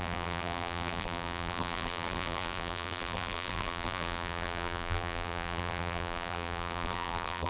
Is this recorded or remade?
remade